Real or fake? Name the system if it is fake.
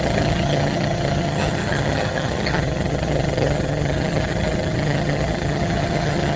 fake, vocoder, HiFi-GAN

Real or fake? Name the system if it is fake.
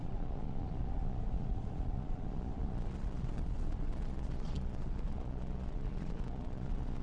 fake, vocoder, Vocos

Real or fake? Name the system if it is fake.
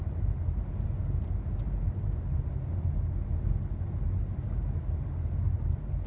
real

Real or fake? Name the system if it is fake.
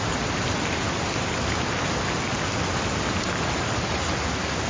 real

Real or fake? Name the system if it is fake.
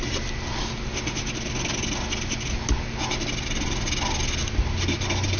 real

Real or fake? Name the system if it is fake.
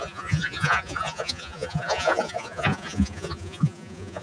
fake, vocoder, Vocos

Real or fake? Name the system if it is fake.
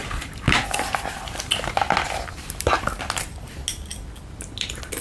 real